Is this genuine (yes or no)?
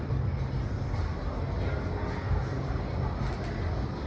yes